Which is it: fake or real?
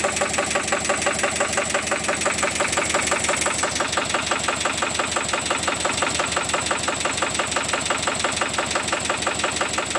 real